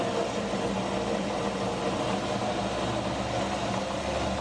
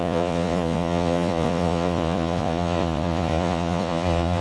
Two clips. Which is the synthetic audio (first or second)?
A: second